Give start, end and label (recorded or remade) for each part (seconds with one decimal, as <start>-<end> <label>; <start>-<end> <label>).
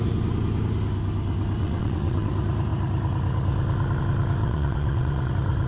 0.0-1.6 recorded; 1.6-2.3 remade; 2.3-4.4 recorded; 4.4-5.3 remade; 5.3-5.7 recorded